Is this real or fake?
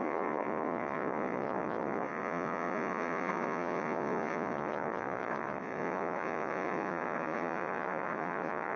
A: fake